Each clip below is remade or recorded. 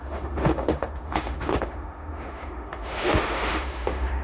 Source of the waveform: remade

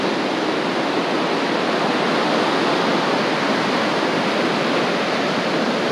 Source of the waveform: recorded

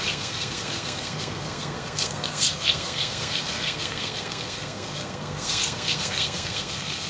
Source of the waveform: remade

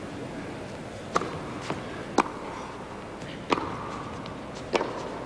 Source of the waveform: recorded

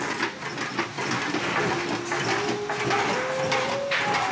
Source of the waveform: recorded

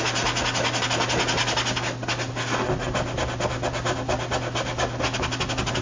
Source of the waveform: recorded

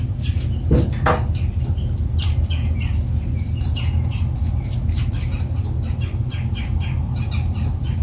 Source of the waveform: recorded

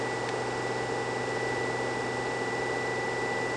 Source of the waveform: recorded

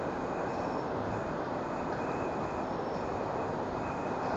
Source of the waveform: recorded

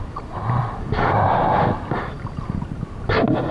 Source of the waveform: recorded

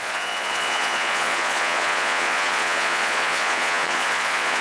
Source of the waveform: remade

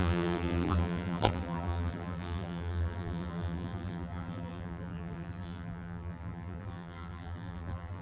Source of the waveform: remade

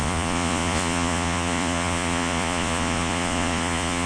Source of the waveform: remade